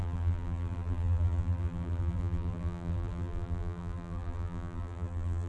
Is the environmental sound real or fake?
fake